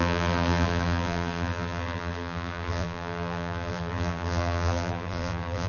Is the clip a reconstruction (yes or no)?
yes